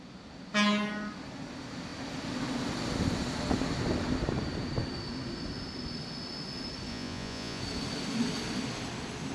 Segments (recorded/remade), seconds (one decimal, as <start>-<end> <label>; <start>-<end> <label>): 0.0-6.9 recorded; 6.9-7.6 remade; 7.6-9.3 recorded